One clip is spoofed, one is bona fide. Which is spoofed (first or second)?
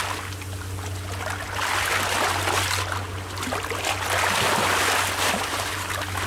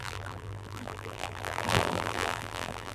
second